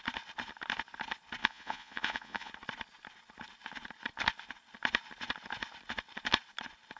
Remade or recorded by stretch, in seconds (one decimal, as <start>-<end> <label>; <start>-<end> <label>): 0.0-1.4 recorded; 1.4-2.5 remade; 2.5-7.0 recorded